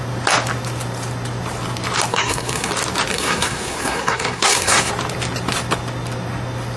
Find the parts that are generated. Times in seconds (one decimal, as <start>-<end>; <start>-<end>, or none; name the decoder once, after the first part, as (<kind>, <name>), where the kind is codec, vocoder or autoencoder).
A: 2.1-2.7 (codec, SNAC); 3.1-4.9